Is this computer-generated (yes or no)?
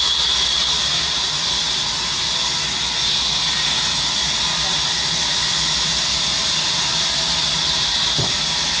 no